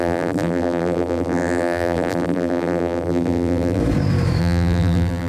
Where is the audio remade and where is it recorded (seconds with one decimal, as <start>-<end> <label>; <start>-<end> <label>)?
0.0-3.8 remade; 3.8-4.4 recorded; 4.4-5.3 remade